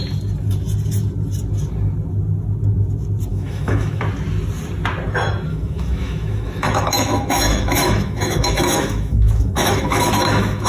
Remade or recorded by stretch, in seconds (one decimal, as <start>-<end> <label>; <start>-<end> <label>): 0.0-3.3 recorded; 3.3-4.0 remade; 4.0-5.5 recorded; 5.5-10.7 remade